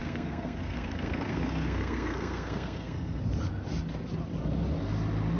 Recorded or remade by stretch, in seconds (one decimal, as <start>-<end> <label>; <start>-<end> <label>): 0.0-3.2 remade; 3.2-5.4 recorded